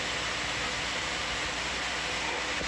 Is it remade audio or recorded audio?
recorded